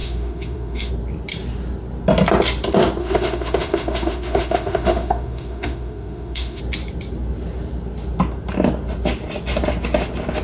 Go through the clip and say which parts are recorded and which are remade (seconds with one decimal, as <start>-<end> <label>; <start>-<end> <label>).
0.0-0.9 remade; 0.9-3.0 recorded; 3.0-6.6 remade; 6.6-10.4 recorded